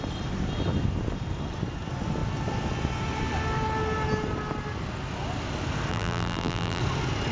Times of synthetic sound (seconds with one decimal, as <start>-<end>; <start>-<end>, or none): 5.9-6.8